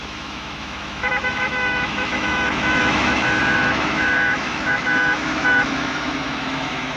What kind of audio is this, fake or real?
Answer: fake